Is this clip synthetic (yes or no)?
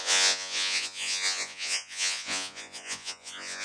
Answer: yes